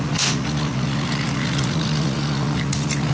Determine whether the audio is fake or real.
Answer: fake